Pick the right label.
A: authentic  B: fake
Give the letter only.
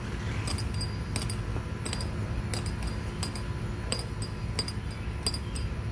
A